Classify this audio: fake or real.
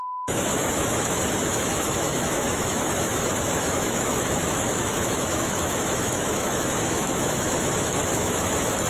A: fake